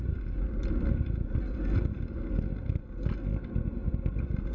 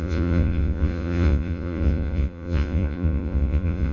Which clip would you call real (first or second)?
first